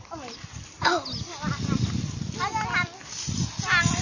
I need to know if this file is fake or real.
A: real